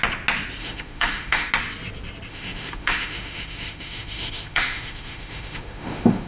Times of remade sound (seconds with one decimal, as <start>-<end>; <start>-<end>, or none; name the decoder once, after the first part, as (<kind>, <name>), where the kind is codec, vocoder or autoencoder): 0.6-1.5 (autoencoder, DAC-VAE); 2.3-6.3